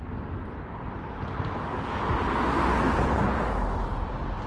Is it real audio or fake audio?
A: real